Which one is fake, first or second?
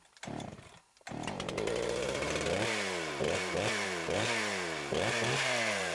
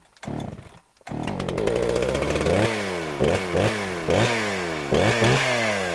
first